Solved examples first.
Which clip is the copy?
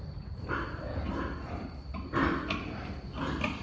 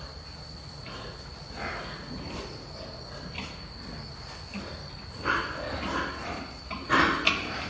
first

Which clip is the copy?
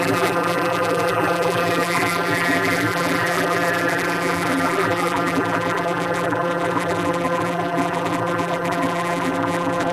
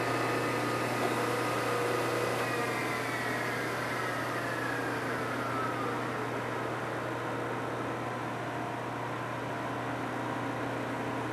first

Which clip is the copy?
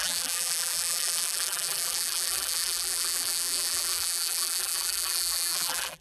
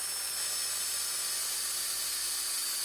first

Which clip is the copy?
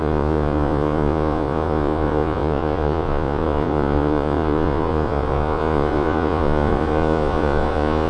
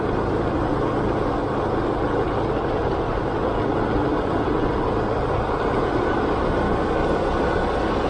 first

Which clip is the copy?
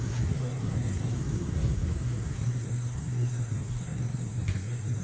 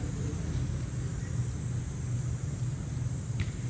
first